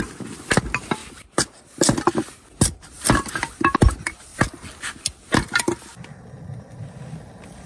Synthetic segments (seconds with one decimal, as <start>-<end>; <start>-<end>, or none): none